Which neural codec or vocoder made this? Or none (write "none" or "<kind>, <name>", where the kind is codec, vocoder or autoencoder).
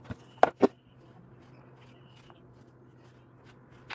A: none